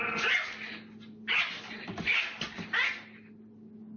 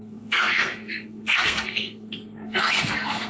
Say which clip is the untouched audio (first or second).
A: first